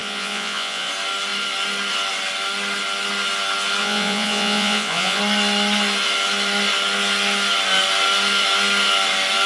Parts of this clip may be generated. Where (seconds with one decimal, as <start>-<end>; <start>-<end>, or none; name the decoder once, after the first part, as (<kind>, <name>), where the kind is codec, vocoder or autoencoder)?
0.0-0.9 (vocoder, Vocos); 3.8-5.2